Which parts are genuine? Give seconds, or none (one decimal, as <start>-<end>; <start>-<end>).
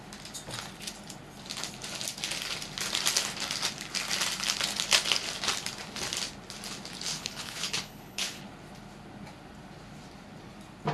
0.0-7.1; 8.4-10.9